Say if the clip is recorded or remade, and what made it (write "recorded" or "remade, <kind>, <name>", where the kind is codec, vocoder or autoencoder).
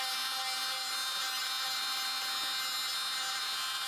recorded